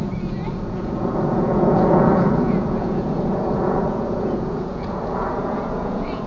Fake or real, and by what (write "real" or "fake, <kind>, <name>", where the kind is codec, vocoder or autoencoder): fake, vocoder, Vocos